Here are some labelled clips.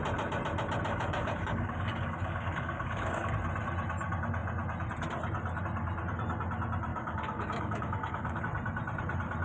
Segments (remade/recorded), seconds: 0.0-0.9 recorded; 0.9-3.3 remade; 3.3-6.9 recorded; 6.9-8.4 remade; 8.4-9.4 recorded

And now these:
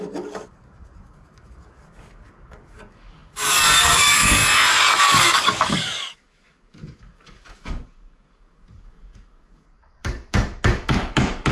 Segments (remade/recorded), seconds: 0.0-4.4 remade; 4.4-5.0 recorded; 5.0-11.5 remade

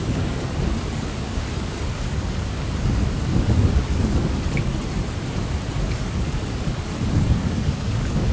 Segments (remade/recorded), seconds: 0.0-4.7 remade; 4.7-5.8 recorded; 5.8-8.3 remade

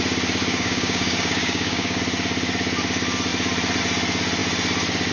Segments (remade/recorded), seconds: 0.0-0.4 recorded; 0.4-2.0 remade; 2.0-5.1 recorded

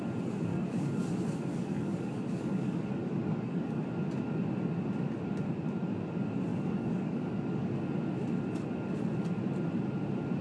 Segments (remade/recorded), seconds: 0.0-0.5 recorded; 0.5-1.0 remade; 1.0-1.5 recorded; 1.5-3.8 remade; 3.8-6.5 recorded; 6.5-7.8 remade; 7.8-10.4 recorded